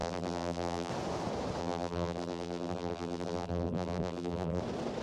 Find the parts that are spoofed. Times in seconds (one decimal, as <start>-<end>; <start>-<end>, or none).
0.0-0.9; 1.6-4.6